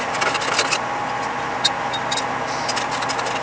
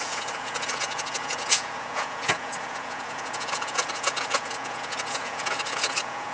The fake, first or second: second